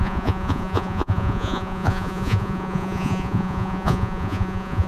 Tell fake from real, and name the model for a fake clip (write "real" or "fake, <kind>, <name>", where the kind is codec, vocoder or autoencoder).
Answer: fake, vocoder, Vocos